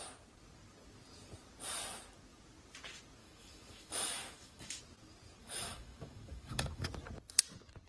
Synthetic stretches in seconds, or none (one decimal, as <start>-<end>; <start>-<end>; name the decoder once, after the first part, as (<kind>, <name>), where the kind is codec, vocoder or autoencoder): 3.2-4.8 (autoencoder, DAC-VAE); 5.4-6.9